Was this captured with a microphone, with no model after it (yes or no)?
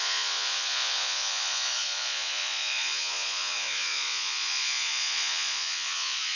no